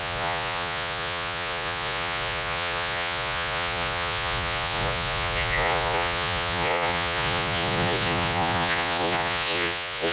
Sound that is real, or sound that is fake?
fake